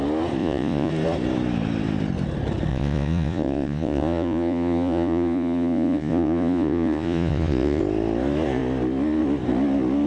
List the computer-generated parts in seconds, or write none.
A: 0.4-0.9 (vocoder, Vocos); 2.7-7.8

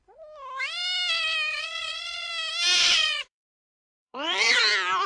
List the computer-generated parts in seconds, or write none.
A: 1.5-2.3 (vocoder, Vocos); 2.8-4.6

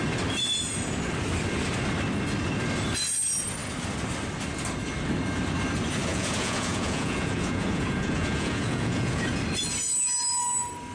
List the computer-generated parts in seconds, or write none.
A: 6.1-9.4 (vocoder, Vocos)